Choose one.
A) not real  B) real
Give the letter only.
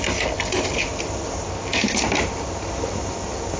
B